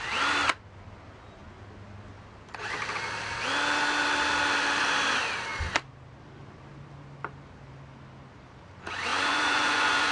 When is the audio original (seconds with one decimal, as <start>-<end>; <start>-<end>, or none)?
0.0-9.1